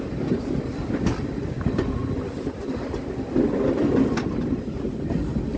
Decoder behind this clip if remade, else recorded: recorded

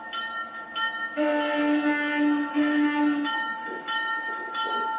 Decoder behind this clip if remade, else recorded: recorded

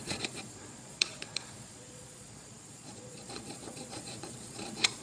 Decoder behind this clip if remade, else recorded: remade, vocoder, Vocos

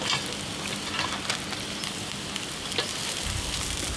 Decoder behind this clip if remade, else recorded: recorded